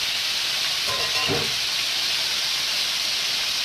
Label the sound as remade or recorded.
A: recorded